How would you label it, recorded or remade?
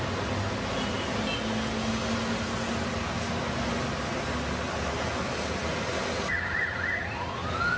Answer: recorded